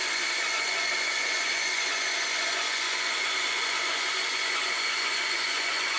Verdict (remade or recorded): remade